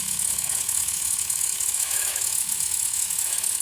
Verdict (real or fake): fake